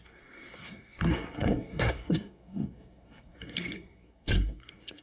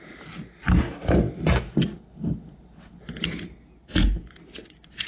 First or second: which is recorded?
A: second